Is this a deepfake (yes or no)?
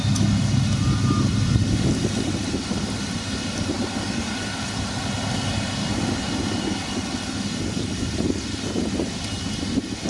no